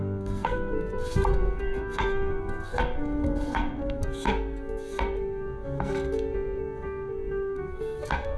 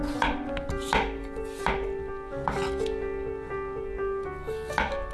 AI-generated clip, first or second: first